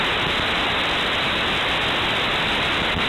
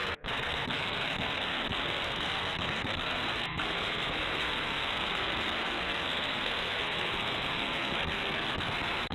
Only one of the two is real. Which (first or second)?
first